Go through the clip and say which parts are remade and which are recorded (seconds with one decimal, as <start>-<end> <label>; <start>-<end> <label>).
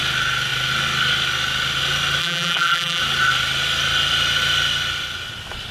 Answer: 0.0-2.2 recorded; 2.2-3.0 remade; 3.0-5.7 recorded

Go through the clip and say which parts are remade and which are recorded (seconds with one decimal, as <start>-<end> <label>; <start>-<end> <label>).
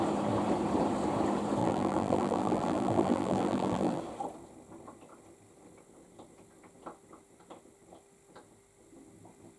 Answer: 0.0-1.6 recorded; 1.6-4.0 remade; 4.0-9.6 recorded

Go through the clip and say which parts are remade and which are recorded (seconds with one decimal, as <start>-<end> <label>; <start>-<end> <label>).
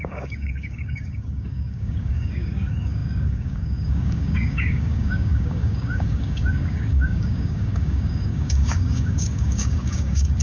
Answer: 0.0-10.4 remade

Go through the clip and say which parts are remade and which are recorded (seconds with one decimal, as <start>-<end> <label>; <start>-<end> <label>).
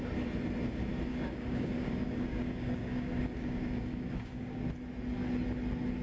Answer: 0.0-1.1 recorded; 1.1-4.7 remade; 4.7-6.0 recorded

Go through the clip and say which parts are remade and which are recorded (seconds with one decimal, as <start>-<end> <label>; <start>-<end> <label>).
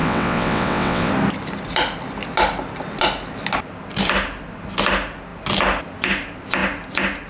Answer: 0.0-1.1 remade; 1.1-7.3 recorded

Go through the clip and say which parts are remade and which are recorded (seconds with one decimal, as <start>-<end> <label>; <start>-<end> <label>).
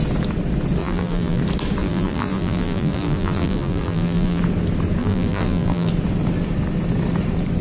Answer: 0.0-0.8 recorded; 0.8-1.4 remade; 1.4-1.8 recorded; 1.8-4.4 remade; 4.4-5.0 recorded; 5.0-5.9 remade; 5.9-7.6 recorded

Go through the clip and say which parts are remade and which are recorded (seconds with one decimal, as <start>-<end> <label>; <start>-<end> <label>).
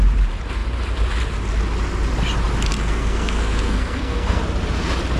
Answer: 0.0-2.7 recorded; 2.7-4.4 remade; 4.4-5.2 recorded